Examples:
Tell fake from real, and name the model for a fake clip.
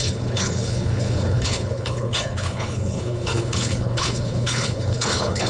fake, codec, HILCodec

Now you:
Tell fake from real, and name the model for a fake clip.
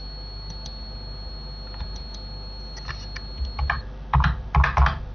real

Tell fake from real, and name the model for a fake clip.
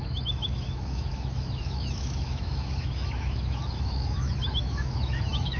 fake, autoencoder, DAC-VAE